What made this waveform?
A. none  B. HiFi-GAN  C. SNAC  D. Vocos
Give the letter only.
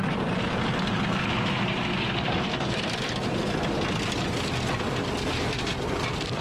A